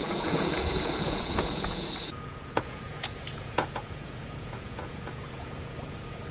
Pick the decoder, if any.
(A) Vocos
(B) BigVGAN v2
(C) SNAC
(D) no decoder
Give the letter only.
A